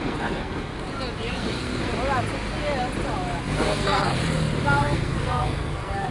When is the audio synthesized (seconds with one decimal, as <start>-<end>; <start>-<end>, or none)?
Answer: 0.0-0.7; 1.3-1.9; 3.4-4.2; 4.8-6.1